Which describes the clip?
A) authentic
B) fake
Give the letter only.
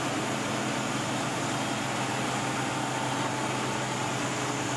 A